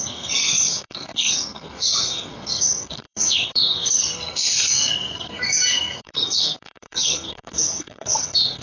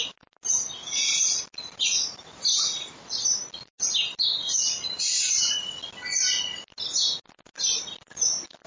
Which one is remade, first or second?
first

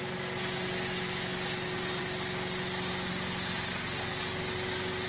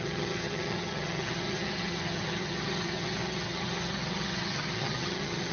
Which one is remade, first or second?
second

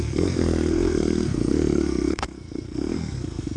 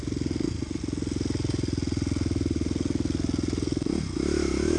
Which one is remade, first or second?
first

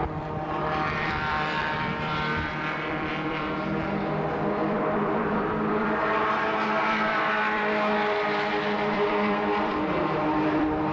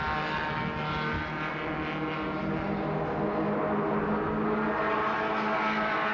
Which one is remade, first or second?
first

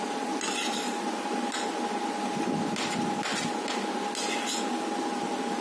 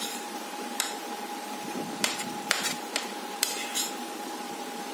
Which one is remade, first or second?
second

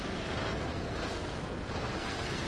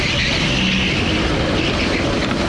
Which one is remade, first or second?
first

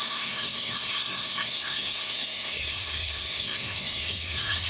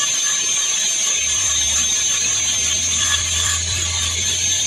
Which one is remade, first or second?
first